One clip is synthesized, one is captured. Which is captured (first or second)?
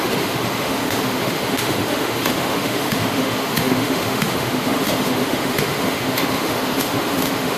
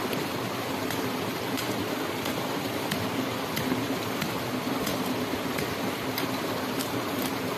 second